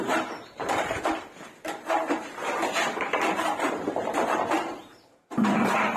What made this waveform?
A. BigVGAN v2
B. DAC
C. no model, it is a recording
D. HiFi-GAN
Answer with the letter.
A